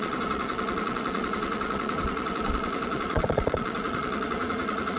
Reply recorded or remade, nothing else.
remade